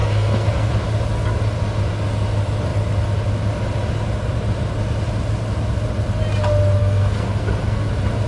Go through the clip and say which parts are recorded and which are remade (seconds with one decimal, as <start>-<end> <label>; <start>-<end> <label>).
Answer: 0.0-0.7 remade; 0.7-6.8 recorded; 6.8-7.9 remade; 7.9-8.3 recorded